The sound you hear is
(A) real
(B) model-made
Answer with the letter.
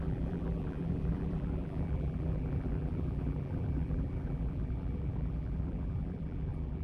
B